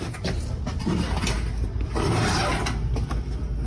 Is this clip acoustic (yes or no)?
yes